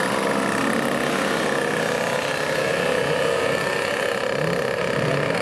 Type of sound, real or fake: real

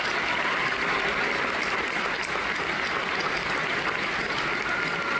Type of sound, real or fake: real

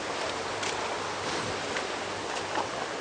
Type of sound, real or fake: real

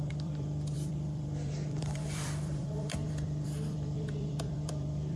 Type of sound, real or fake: fake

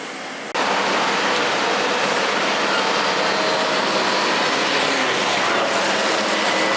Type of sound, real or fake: real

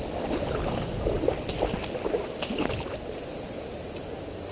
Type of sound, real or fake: real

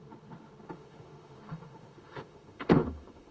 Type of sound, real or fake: fake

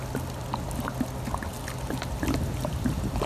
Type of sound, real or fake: real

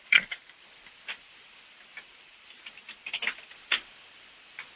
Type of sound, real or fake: fake